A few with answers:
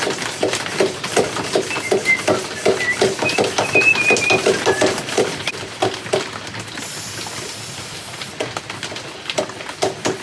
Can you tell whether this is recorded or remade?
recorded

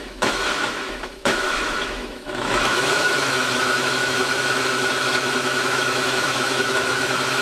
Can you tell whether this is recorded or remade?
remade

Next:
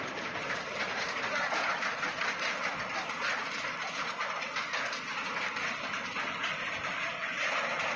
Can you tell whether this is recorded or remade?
recorded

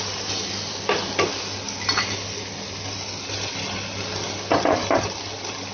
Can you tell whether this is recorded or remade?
recorded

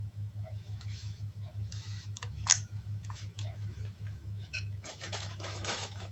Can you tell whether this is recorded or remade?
remade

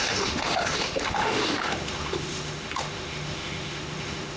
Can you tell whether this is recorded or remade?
remade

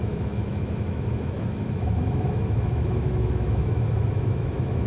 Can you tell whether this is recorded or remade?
remade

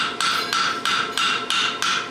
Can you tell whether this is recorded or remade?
recorded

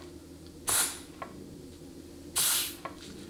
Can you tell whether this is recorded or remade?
recorded